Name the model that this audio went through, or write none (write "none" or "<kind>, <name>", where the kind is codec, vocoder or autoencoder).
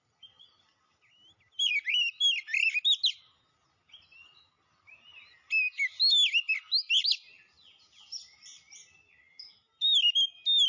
none